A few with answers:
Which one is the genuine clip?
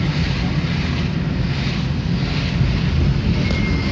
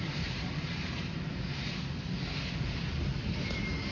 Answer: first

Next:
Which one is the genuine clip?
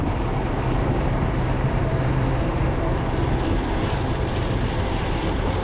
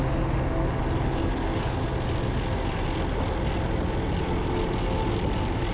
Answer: second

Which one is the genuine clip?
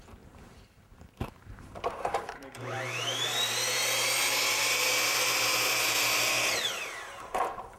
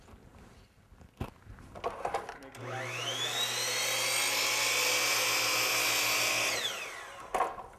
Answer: second